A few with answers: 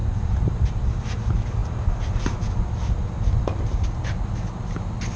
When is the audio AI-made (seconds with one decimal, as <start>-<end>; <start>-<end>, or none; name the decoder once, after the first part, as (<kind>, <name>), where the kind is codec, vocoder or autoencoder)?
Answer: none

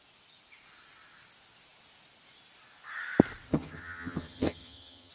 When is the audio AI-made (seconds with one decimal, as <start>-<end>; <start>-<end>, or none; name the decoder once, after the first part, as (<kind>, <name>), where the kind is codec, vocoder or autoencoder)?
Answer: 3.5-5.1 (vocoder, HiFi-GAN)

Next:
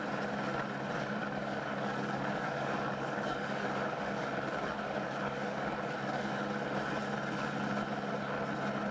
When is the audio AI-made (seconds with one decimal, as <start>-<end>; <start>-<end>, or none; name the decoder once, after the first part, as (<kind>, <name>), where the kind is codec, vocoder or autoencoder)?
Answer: 1.2-6.4 (codec, DAC)

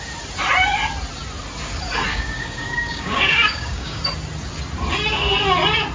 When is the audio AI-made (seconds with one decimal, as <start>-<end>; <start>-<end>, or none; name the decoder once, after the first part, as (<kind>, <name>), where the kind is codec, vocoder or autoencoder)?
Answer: 2.1-4.0 (codec, DAC)

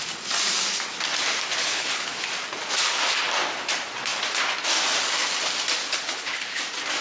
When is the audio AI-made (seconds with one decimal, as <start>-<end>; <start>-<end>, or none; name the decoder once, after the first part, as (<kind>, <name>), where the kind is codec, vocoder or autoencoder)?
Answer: 1.6-2.1 (codec, HILCodec); 5.8-6.6

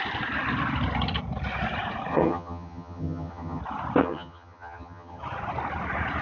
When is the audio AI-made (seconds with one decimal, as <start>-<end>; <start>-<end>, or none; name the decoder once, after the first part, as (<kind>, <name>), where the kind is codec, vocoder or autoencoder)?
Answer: 2.1-3.6 (vocoder, HiFi-GAN); 4.0-5.2

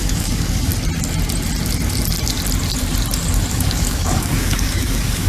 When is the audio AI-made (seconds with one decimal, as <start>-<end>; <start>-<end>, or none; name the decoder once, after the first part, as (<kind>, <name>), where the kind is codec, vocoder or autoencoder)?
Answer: 0.0-0.7 (codec, DAC); 3.5-5.3

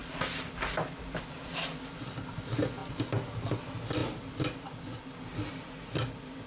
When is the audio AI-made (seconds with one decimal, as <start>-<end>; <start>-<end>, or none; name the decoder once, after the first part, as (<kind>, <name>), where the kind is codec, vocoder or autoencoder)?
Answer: none